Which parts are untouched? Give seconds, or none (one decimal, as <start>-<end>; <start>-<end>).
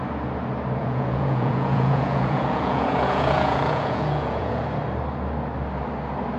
0.0-0.8; 4.6-6.4